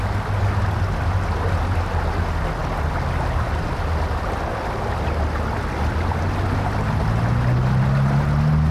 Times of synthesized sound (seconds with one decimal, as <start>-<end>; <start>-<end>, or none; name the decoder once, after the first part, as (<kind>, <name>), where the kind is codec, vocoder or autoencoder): none